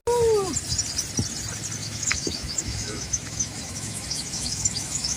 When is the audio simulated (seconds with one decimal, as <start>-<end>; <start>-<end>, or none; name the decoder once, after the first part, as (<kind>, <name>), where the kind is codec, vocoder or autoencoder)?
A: 1.8-5.2 (autoencoder, DAC-VAE)